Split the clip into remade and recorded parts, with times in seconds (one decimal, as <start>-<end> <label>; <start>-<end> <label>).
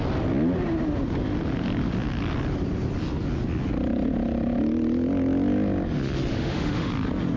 0.0-6.3 recorded; 6.3-6.9 remade; 6.9-7.4 recorded